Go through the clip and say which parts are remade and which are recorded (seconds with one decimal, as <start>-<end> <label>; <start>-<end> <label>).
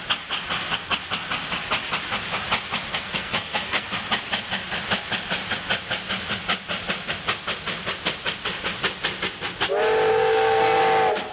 0.0-2.9 recorded; 2.9-3.9 remade; 3.9-10.1 recorded; 10.1-10.8 remade; 10.8-11.3 recorded